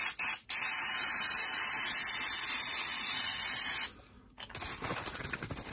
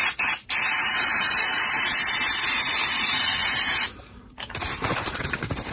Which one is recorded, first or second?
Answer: first